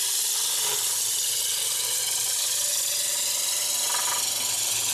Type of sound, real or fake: real